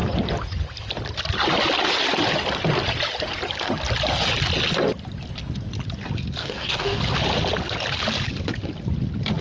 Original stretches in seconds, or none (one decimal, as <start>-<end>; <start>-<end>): 0.0-6.4; 7.0-9.4